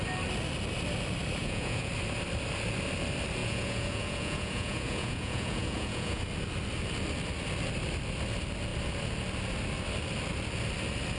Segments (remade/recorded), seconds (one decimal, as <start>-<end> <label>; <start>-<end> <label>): 0.0-1.4 recorded; 1.4-1.9 remade; 1.9-3.4 recorded; 3.4-6.2 remade; 6.2-11.2 recorded